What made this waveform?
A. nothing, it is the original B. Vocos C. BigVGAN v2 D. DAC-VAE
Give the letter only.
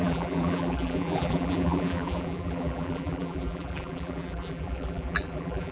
C